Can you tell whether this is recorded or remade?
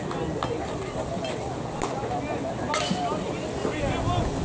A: recorded